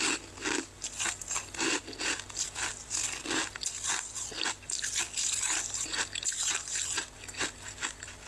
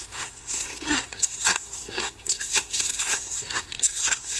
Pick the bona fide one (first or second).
first